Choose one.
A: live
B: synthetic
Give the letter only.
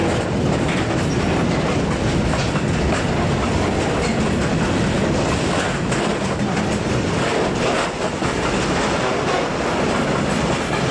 A